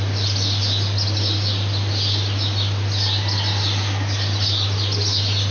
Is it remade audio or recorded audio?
recorded